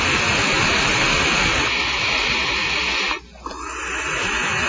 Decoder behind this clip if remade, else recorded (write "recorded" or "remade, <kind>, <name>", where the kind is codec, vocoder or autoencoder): recorded